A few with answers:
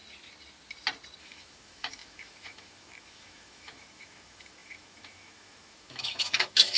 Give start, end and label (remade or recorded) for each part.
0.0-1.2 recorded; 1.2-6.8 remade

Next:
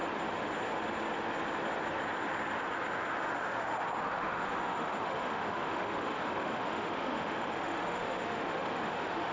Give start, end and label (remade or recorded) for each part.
0.0-4.0 recorded; 4.0-9.3 remade

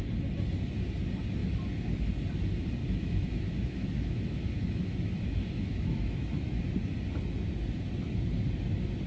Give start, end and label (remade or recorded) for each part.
0.0-2.8 recorded; 2.8-6.6 remade; 6.6-9.1 recorded

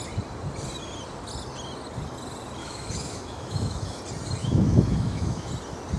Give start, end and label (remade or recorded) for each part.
0.0-2.6 recorded; 2.6-4.0 remade; 4.0-4.4 recorded; 4.4-5.5 remade; 5.5-6.0 recorded

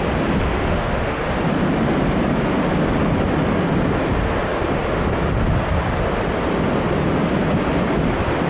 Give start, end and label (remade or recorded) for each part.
0.0-0.4 recorded; 0.4-1.2 remade; 1.2-8.5 recorded